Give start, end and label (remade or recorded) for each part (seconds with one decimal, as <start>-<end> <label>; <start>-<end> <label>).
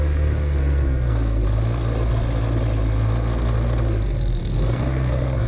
0.0-1.4 remade; 1.4-4.4 recorded; 4.4-5.5 remade